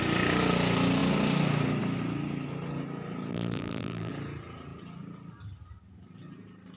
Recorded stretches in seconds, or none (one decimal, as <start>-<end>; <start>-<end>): 0.0-3.3; 4.1-6.8